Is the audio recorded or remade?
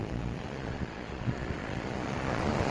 remade